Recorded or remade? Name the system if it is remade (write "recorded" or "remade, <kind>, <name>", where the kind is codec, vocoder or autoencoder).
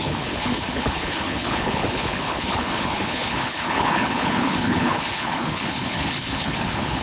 remade, codec, HILCodec